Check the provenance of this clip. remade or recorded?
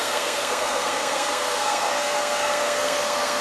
remade